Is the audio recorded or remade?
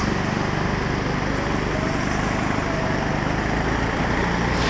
recorded